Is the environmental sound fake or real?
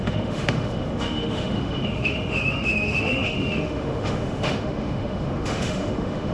fake